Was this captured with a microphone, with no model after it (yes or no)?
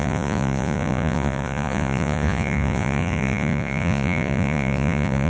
no